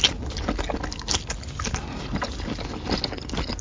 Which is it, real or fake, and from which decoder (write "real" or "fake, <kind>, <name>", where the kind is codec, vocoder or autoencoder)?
real